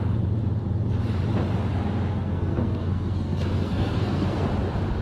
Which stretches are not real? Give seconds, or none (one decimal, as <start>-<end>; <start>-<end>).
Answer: 2.1-4.5